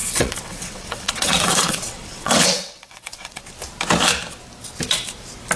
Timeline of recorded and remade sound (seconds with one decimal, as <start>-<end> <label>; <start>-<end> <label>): 0.0-3.4 remade; 3.4-5.6 recorded